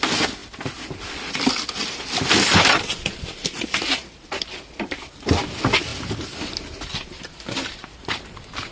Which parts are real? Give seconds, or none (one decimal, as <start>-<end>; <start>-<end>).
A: 0.0-8.7